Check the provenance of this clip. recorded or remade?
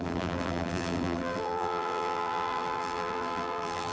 remade